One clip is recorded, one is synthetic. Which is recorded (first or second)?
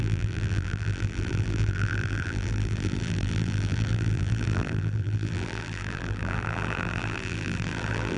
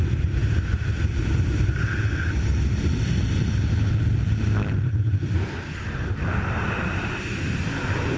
second